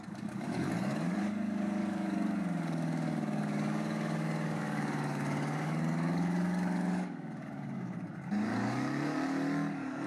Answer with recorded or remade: remade